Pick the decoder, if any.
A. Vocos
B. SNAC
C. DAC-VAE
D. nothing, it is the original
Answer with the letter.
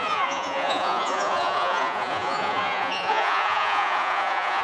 A